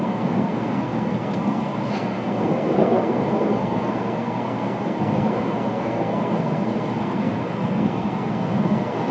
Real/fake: fake